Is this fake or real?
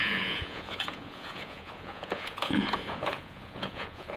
fake